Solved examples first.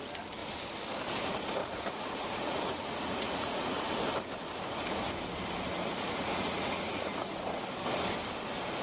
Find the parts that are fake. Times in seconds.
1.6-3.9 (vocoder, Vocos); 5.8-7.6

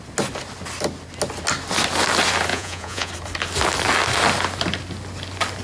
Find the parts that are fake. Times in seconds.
2.5-3.1 (vocoder, Vocos)